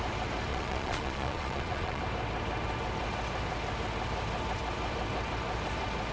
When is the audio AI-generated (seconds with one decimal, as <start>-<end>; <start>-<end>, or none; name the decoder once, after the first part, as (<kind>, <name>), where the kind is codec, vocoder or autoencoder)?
0.5-2.0 (vocoder, Vocos)